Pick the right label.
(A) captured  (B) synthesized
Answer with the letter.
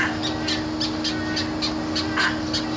A